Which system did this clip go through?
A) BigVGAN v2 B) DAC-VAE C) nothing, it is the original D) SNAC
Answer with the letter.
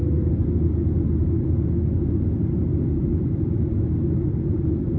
C